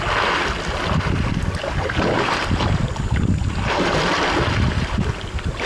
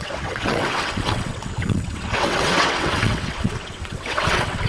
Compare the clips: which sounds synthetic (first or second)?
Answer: second